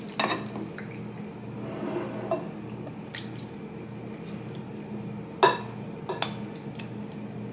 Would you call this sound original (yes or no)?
yes